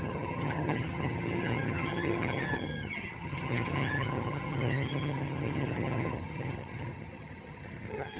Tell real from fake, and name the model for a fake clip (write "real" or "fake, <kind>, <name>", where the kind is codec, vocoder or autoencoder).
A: fake, vocoder, HiFi-GAN